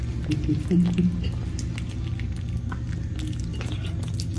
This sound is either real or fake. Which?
real